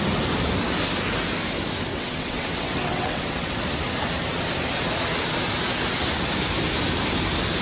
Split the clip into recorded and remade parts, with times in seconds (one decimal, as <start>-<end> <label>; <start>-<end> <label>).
0.0-1.9 recorded; 1.9-3.5 remade; 3.5-7.6 recorded